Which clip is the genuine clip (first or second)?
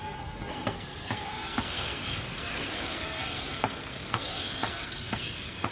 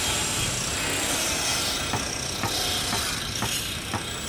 second